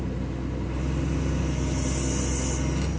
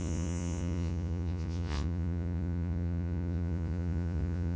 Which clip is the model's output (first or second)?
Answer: second